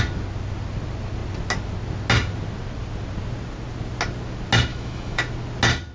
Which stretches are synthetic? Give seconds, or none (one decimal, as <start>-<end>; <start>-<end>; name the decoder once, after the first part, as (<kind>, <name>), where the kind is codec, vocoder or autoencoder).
4.7-5.2 (autoencoder, DAC-VAE)